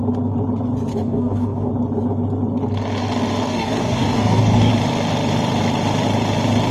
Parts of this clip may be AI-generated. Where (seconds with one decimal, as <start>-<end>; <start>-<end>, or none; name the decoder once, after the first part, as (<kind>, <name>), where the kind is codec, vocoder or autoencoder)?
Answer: 0.9-1.7 (codec, DAC); 3.5-4.7